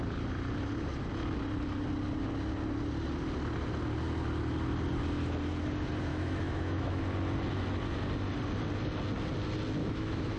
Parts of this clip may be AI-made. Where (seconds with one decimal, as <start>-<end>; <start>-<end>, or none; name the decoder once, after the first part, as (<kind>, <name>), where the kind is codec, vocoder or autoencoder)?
6.1-7.0 (autoencoder, DAC-VAE); 9.8-10.4